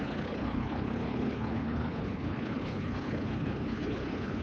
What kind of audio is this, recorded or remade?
remade